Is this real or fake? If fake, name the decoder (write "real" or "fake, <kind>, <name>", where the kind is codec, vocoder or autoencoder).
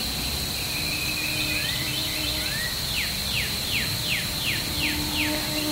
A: real